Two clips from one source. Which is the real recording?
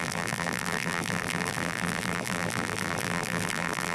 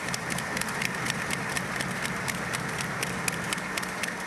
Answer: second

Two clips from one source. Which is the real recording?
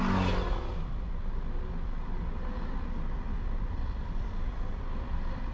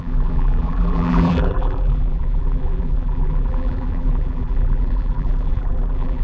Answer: first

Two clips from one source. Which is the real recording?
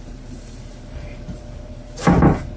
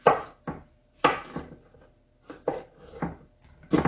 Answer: second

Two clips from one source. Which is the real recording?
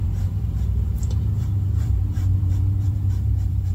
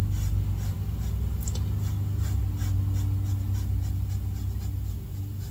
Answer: second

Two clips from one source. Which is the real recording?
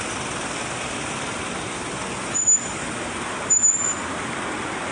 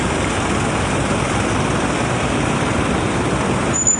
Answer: first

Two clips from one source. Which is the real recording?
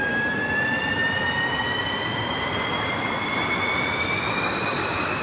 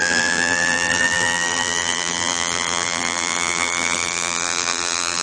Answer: first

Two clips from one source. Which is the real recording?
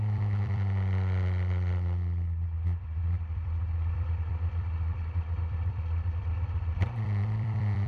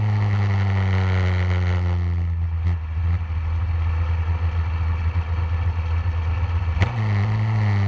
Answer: second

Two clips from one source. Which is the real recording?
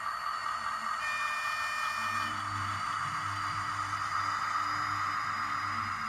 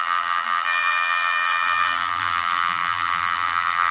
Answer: first